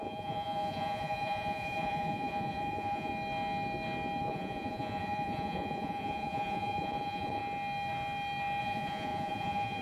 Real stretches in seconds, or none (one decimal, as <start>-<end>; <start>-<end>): 3.1-4.2; 7.4-8.6